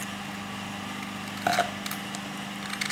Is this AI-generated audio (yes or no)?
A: no